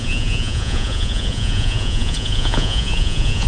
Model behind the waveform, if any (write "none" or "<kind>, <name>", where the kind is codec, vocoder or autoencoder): vocoder, Vocos